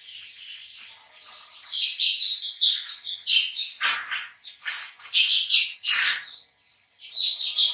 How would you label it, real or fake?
real